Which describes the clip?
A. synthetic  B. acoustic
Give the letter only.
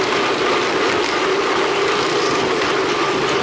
B